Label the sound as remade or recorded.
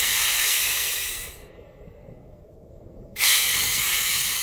remade